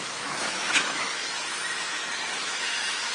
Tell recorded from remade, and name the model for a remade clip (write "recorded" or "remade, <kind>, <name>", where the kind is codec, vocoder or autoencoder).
remade, autoencoder, DAC-VAE